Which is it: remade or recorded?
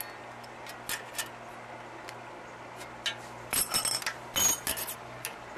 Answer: recorded